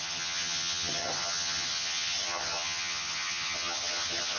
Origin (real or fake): fake